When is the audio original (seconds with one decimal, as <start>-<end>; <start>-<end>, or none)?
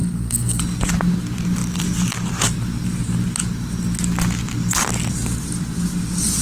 0.6-6.4